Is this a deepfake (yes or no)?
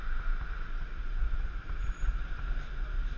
no